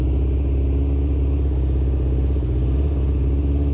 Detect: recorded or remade recorded